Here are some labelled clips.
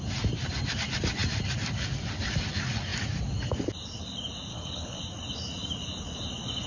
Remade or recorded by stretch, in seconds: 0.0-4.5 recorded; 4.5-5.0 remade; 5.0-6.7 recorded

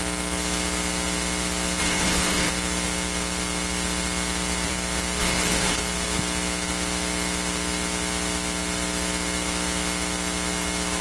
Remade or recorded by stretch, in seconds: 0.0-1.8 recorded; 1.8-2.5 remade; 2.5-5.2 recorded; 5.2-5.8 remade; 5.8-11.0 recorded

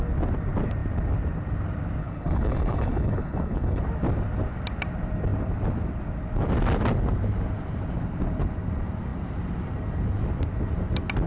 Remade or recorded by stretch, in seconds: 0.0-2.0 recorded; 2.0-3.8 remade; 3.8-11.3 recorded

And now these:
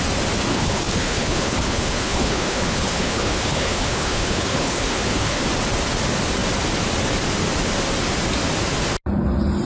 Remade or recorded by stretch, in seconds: 0.0-0.5 recorded; 0.5-5.4 remade; 5.4-9.6 recorded

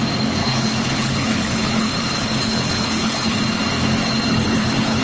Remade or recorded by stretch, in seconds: 0.0-0.4 recorded; 0.4-3.4 remade; 3.4-4.3 recorded; 4.3-5.0 remade

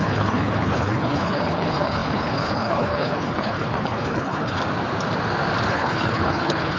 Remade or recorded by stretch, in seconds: 0.0-4.6 remade; 4.6-5.7 recorded; 5.7-6.8 remade

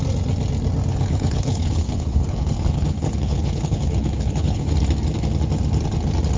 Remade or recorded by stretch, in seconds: 0.0-0.9 recorded; 0.9-4.7 remade; 4.7-6.4 recorded

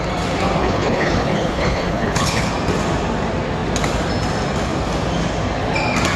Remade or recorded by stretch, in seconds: 0.0-0.6 recorded; 0.6-2.5 remade; 2.5-6.2 recorded